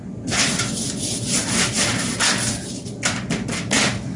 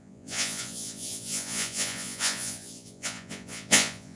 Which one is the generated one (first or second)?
second